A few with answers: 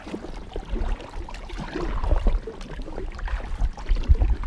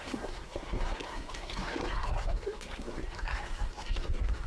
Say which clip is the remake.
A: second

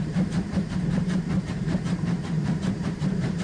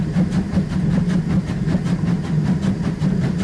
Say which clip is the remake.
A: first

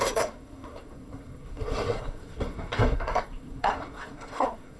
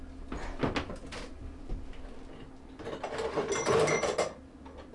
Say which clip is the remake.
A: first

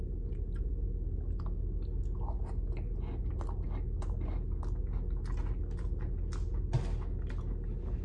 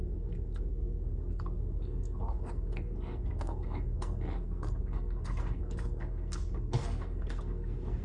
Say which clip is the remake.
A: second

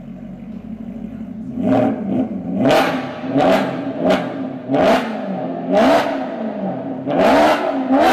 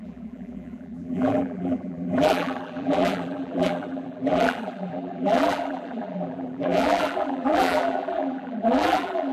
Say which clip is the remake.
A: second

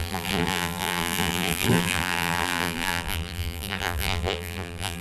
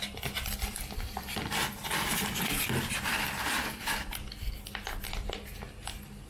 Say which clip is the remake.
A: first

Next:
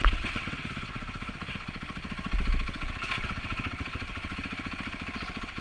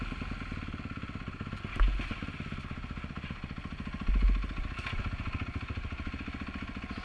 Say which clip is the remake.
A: first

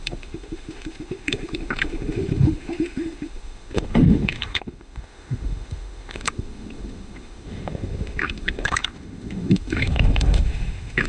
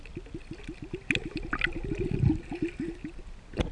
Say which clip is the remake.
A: first